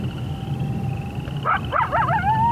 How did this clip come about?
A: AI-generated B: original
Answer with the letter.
B